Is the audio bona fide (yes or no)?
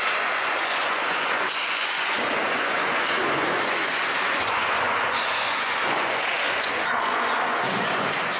no